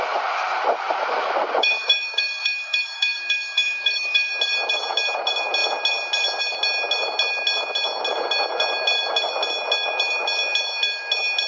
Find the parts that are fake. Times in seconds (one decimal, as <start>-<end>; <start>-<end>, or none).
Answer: 1.6-4.3